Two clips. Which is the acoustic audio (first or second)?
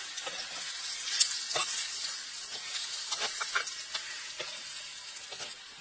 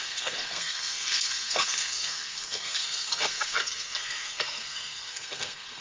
first